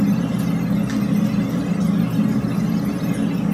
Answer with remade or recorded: recorded